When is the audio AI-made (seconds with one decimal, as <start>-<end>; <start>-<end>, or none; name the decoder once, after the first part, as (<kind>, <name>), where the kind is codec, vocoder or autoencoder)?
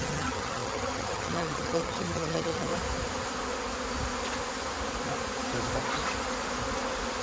0.0-2.7 (vocoder, HiFi-GAN)